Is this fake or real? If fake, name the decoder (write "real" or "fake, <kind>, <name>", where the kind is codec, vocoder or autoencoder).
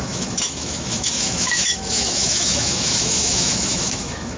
fake, autoencoder, DAC-VAE